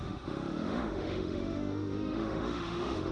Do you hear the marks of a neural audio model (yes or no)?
yes